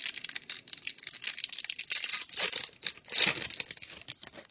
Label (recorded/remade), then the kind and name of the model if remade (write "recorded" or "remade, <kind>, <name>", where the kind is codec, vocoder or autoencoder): recorded